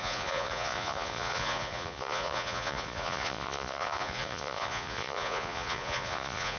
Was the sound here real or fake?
fake